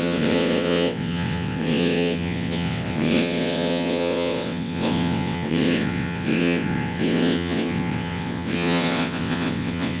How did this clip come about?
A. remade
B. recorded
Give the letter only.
A